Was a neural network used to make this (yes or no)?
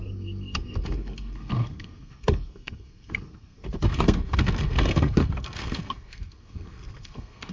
yes